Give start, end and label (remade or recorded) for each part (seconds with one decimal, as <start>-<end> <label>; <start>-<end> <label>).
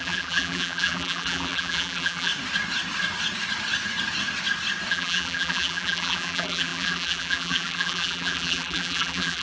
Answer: 0.0-2.3 remade; 2.3-4.9 recorded; 4.9-9.4 remade